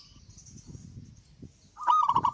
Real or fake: real